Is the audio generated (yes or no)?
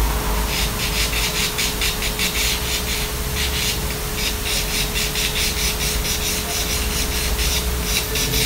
no